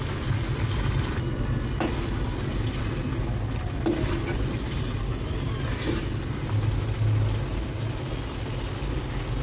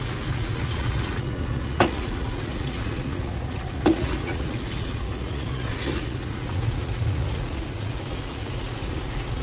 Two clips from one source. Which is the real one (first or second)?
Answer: first